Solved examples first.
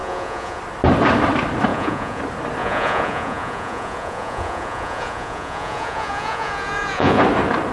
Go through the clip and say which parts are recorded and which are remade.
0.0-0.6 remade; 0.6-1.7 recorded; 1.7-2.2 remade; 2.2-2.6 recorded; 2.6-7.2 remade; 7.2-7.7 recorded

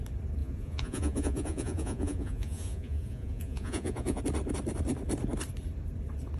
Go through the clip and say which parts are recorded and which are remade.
0.0-0.4 recorded; 0.4-4.2 remade; 4.2-6.4 recorded

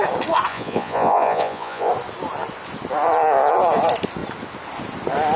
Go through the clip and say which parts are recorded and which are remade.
0.0-0.5 recorded; 0.5-1.9 remade; 1.9-5.4 recorded

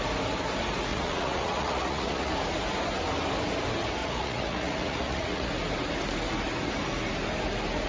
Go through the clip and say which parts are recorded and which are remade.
0.0-0.9 recorded; 0.9-2.3 remade; 2.3-4.0 recorded; 4.0-5.5 remade; 5.5-7.9 recorded

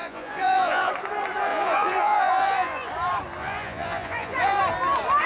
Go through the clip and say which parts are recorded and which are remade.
0.0-0.9 remade; 0.9-1.5 recorded; 1.5-2.9 remade; 2.9-3.4 recorded; 3.4-4.6 remade; 4.6-5.3 recorded

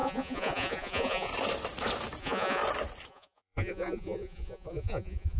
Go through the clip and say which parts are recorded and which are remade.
0.0-1.3 remade; 1.3-2.2 recorded; 2.2-2.6 remade; 2.6-3.1 recorded; 3.1-5.4 remade

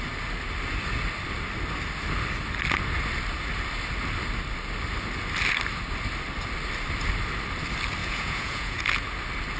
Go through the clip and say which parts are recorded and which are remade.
0.0-8.0 recorded; 8.0-8.8 remade; 8.8-9.6 recorded

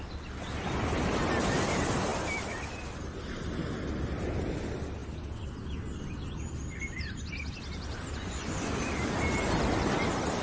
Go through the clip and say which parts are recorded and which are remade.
0.0-8.2 recorded; 8.2-8.8 remade; 8.8-10.4 recorded